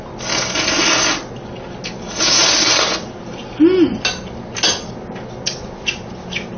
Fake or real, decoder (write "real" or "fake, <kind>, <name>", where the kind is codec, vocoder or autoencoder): real